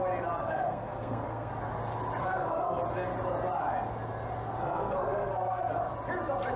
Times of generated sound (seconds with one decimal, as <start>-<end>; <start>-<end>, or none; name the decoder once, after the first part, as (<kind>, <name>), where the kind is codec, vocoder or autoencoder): 0.4-1.5 (codec, SNAC); 2.2-2.8; 4.6-5.7